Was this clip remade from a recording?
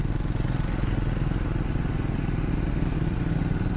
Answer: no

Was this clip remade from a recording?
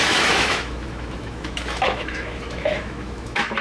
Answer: yes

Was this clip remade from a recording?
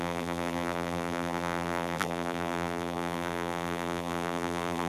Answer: yes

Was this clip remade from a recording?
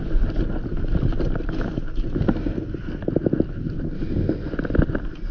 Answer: no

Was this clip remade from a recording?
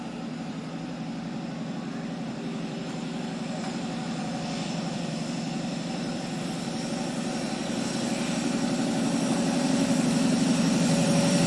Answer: yes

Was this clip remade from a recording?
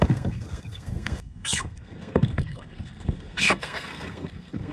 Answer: yes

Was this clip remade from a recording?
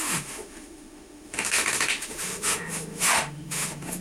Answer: yes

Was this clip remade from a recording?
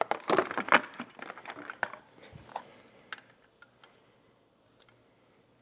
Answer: no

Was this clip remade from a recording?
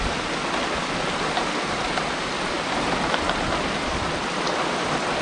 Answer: no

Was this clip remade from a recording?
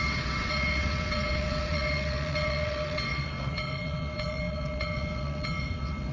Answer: yes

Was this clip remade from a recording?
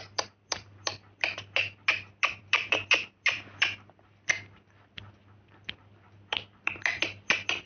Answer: yes